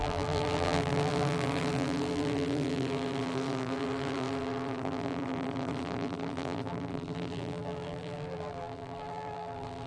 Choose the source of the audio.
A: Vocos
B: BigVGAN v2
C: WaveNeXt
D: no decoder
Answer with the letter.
B